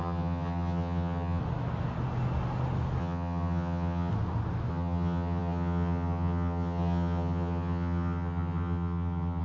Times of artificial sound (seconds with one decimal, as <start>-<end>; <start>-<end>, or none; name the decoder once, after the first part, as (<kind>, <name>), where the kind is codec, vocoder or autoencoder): 0.0-1.4 (vocoder, HiFi-GAN); 3.0-4.1; 4.7-9.4